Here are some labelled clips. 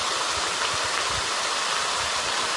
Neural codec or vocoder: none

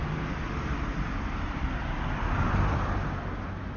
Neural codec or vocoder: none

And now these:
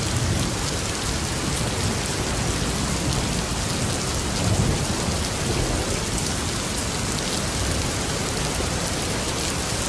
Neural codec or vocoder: none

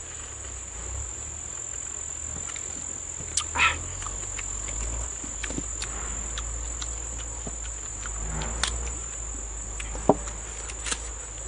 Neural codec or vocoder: none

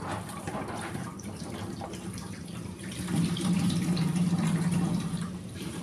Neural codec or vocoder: vocoder, BigVGAN v2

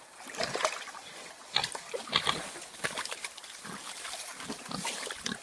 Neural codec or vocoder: none